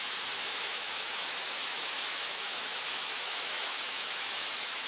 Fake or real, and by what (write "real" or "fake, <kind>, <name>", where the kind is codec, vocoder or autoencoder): fake, autoencoder, DAC-VAE